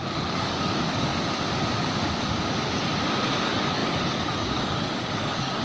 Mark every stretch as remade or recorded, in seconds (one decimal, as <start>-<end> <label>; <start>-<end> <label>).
0.0-1.1 remade; 1.1-3.4 recorded; 3.4-5.6 remade